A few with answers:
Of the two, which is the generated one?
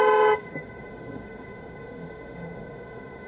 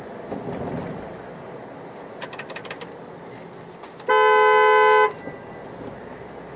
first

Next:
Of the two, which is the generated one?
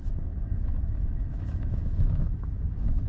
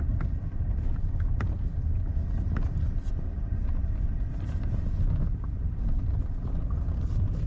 first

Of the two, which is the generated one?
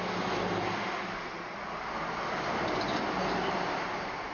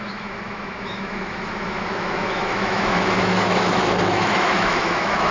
second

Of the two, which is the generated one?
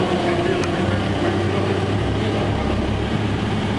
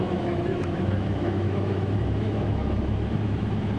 second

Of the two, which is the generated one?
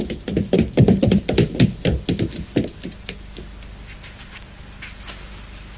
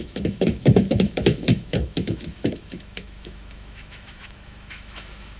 second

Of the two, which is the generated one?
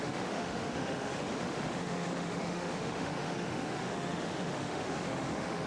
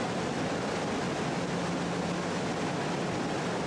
first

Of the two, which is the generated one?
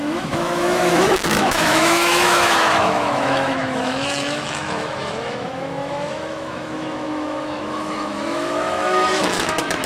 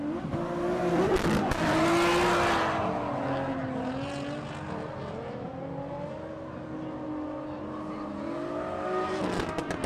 first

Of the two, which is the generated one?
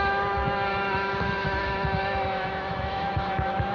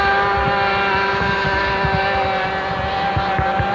first